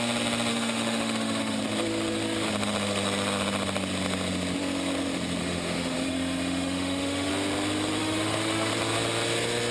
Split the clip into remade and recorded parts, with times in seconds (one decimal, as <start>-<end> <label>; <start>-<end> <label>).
0.0-0.5 recorded; 0.5-1.6 remade; 1.6-5.4 recorded; 5.4-7.3 remade; 7.3-8.0 recorded; 8.0-8.7 remade; 8.7-9.7 recorded